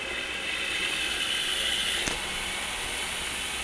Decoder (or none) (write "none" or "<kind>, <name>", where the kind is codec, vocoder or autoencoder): none